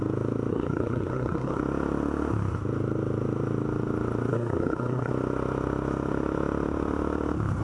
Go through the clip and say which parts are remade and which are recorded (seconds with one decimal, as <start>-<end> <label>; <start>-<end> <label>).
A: 0.0-0.5 recorded; 0.5-1.6 remade; 1.6-4.3 recorded; 4.3-5.1 remade; 5.1-7.6 recorded